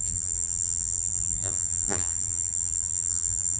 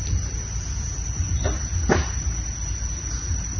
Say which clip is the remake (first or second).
first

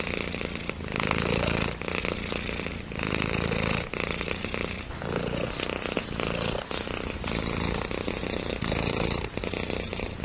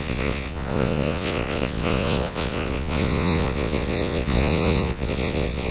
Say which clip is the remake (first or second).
second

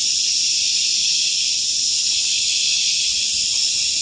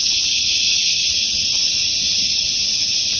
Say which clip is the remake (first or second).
second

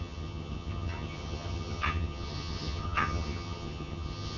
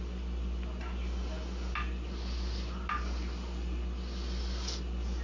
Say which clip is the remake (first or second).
first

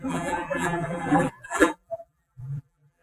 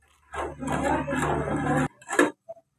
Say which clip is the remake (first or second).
first